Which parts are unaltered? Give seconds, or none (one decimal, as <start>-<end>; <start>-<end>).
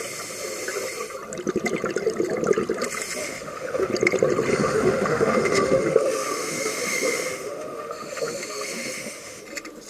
0.0-3.2; 3.9-4.5; 9.4-9.9